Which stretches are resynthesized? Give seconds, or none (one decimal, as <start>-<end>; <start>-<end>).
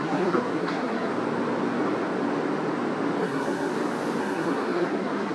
0.0-1.1; 3.2-3.7; 4.2-5.3